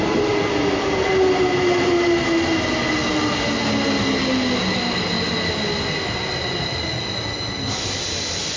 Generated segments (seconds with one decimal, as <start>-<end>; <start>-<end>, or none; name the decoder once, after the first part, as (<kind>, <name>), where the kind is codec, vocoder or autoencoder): none